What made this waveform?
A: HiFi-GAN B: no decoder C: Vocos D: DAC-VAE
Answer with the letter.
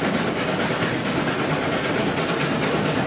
B